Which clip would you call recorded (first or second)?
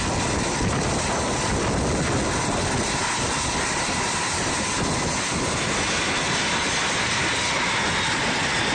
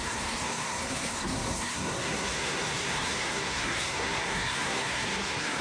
first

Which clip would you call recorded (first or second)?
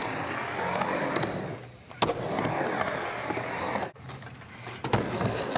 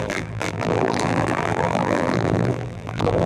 first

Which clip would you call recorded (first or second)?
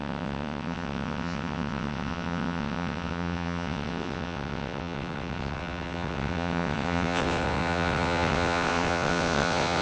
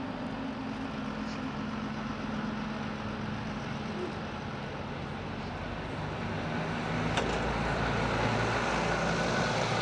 second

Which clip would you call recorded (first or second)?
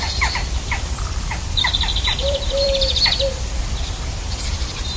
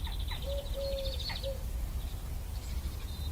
second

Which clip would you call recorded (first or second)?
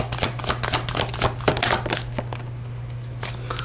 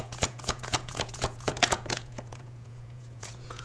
first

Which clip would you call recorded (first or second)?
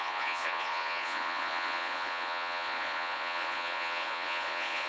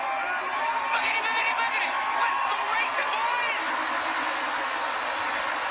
second